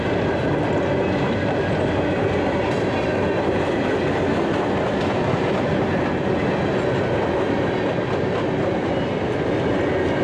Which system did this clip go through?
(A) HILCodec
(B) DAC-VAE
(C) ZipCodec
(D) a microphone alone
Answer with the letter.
D